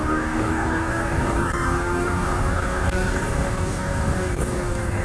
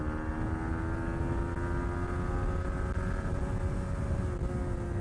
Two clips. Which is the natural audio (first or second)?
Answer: second